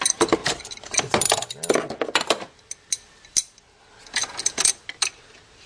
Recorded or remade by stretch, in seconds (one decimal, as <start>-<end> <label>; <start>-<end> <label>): 0.0-5.7 recorded

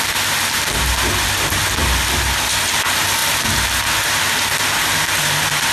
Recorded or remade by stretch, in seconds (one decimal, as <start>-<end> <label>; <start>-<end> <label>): 0.0-5.7 recorded

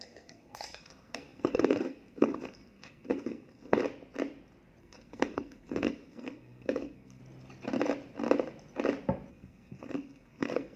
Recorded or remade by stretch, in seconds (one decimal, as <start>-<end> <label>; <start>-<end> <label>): 0.0-3.8 remade; 3.8-4.8 recorded; 4.8-7.2 remade; 7.2-9.3 recorded; 9.3-10.8 remade

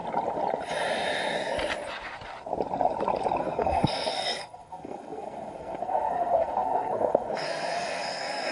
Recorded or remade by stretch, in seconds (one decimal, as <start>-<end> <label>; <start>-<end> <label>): 0.0-3.4 recorded; 3.4-8.5 remade

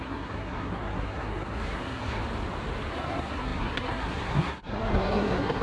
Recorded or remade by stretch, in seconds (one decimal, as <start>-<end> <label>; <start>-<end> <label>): 0.0-2.2 remade; 2.2-2.9 recorded; 2.9-5.6 remade

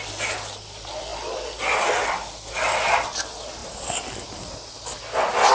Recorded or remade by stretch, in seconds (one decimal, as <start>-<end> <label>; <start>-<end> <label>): 0.0-5.5 recorded

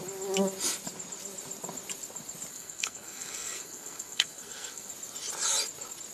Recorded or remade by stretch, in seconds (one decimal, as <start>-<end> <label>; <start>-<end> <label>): 0.0-2.5 recorded; 2.5-4.9 remade; 4.9-6.1 recorded

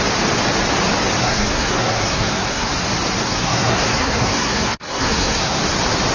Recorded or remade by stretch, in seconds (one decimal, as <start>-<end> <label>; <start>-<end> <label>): 0.0-1.2 recorded; 1.2-2.7 remade; 2.7-3.2 recorded; 3.2-5.6 remade; 5.6-6.1 recorded